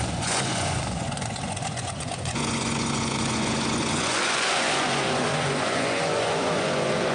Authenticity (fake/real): fake